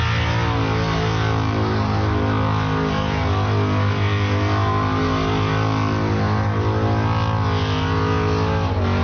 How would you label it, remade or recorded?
recorded